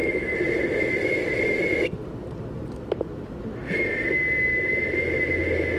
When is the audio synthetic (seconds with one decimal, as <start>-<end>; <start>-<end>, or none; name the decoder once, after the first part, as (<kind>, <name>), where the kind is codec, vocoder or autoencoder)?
0.0-0.8 (vocoder, BigVGAN v2); 2.1-3.4